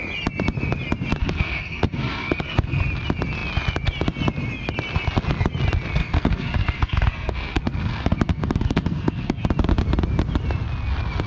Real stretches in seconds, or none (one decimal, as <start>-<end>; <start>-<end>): 0.0-1.2; 2.8-6.0; 9.5-11.3